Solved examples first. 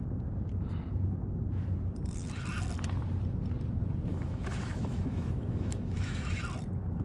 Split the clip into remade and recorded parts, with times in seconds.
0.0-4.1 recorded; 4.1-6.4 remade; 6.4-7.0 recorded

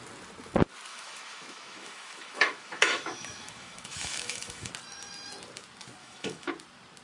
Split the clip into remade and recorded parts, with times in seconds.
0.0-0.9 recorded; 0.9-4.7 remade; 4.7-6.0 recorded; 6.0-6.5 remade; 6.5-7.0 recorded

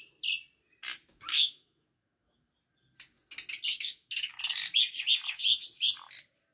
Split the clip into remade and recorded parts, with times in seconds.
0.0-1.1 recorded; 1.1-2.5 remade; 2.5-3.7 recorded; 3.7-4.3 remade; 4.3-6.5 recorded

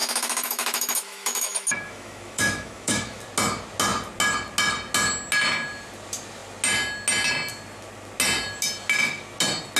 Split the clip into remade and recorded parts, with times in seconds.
0.0-3.2 remade; 3.2-9.8 recorded

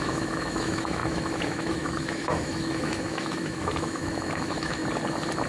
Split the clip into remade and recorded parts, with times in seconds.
0.0-4.8 remade; 4.8-5.5 recorded